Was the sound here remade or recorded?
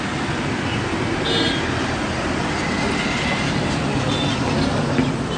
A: recorded